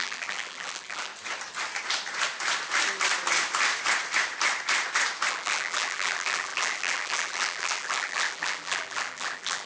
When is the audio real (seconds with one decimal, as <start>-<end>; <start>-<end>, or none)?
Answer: 1.1-5.3